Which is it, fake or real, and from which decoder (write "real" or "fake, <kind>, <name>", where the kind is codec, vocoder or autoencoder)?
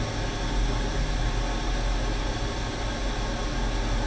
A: real